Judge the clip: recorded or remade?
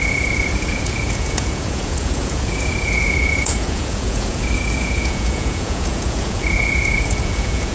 remade